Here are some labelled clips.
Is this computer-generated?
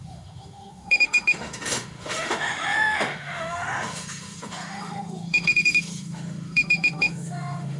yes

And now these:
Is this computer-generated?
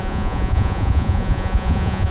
yes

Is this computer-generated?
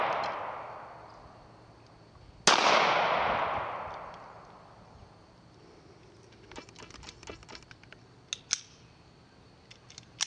no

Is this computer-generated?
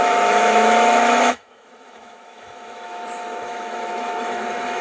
yes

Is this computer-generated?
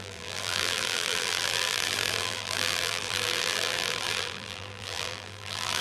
yes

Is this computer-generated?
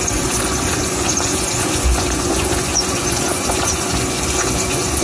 yes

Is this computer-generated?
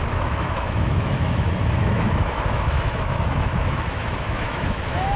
yes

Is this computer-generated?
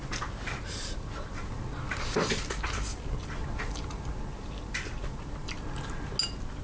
no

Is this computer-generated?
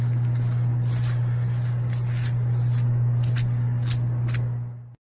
no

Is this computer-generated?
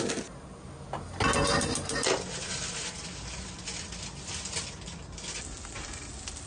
no